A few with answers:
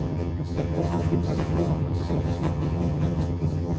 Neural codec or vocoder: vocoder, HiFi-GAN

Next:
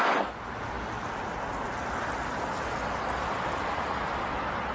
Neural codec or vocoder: none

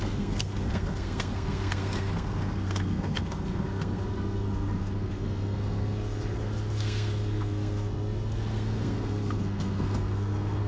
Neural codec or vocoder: codec, SNAC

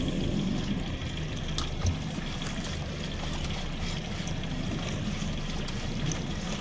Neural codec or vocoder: none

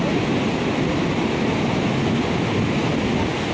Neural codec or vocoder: none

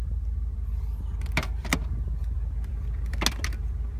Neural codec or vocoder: none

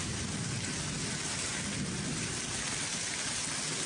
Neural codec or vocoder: none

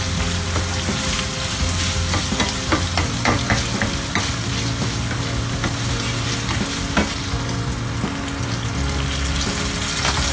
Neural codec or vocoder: none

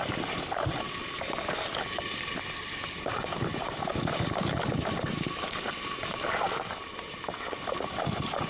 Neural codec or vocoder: none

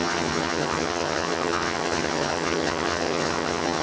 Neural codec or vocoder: vocoder, HiFi-GAN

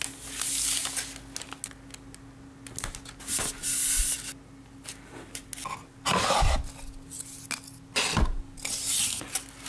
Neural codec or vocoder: none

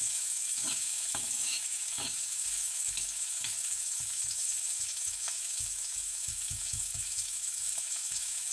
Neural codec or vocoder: autoencoder, DAC-VAE